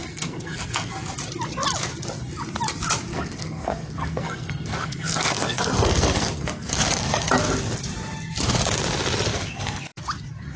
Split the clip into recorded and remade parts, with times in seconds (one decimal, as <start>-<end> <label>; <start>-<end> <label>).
0.0-0.9 remade; 0.9-3.1 recorded; 3.1-7.3 remade; 7.3-9.3 recorded; 9.3-10.0 remade; 10.0-10.6 recorded